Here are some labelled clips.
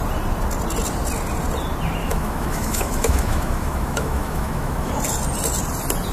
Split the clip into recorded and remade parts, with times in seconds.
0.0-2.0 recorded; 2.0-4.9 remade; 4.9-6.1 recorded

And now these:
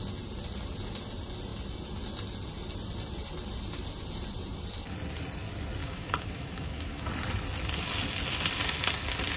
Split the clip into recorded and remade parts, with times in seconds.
0.0-5.8 recorded; 5.8-7.1 remade; 7.1-9.4 recorded